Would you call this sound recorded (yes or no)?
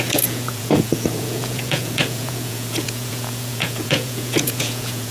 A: no